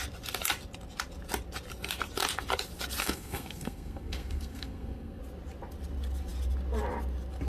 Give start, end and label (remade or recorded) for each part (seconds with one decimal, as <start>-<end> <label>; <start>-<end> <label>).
0.0-3.0 recorded; 3.0-5.2 remade; 5.2-7.5 recorded